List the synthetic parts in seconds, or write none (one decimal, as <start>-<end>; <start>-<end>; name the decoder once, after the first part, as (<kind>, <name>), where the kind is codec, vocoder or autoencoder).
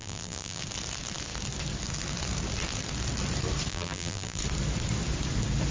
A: 0.0-0.6 (vocoder, BigVGAN v2); 3.7-4.4